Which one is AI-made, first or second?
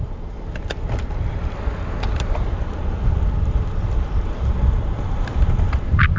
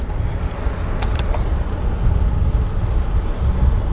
first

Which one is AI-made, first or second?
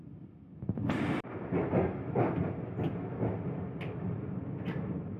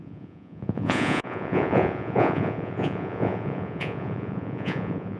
second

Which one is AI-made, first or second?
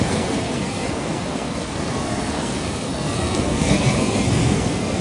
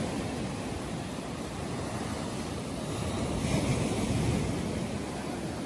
first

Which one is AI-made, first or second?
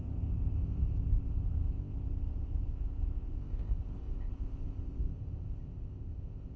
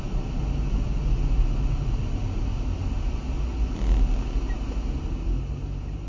first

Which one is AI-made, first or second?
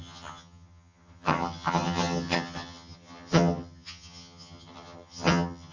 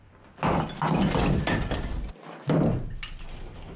first